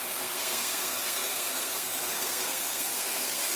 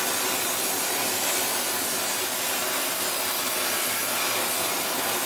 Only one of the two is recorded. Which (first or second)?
second